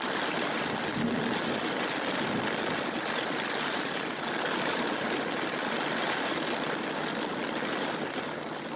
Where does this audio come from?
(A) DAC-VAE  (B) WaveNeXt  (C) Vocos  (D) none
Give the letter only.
D